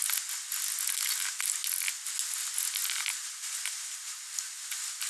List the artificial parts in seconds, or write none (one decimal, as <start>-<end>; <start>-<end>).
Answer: none